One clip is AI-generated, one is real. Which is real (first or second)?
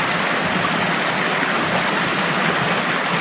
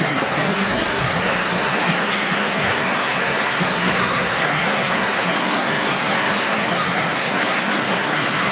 first